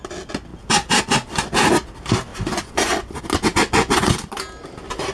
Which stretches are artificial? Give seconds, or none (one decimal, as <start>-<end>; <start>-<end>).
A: 2.3-3.2; 3.6-4.2